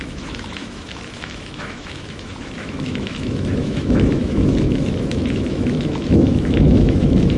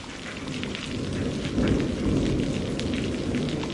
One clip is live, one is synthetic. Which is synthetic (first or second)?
first